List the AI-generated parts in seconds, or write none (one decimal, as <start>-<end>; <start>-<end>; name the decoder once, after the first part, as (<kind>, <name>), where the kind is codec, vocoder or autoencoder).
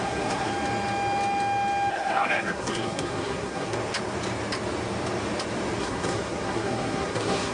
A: 0.0-0.5 (codec, SNAC); 1.9-3.8; 5.8-7.5